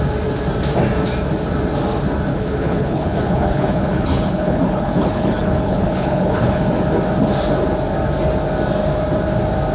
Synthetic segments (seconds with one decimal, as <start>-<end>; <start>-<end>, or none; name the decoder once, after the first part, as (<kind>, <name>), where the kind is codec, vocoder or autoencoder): 2.3-6.6 (codec, HILCodec)